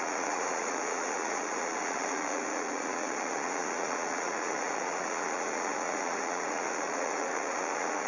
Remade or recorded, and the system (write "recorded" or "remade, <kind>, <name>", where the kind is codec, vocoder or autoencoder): remade, vocoder, Vocos